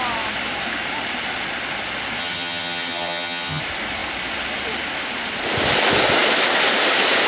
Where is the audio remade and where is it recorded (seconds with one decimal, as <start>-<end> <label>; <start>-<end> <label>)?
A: 0.0-2.2 recorded; 2.2-3.6 remade; 3.6-7.3 recorded